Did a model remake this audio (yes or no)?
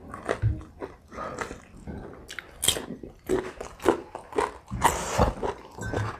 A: no